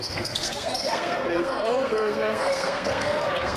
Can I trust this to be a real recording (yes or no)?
no